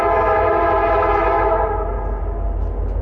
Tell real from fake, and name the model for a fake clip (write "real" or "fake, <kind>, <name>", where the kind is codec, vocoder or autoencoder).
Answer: real